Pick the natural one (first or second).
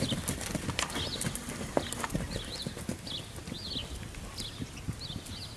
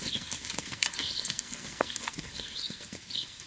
first